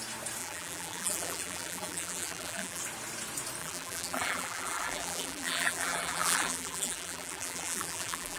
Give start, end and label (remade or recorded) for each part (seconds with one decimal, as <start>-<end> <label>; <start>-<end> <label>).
0.0-0.4 recorded; 0.4-2.8 remade; 2.8-3.6 recorded; 3.6-8.4 remade